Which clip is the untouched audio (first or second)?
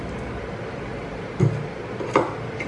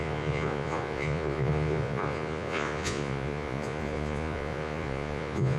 first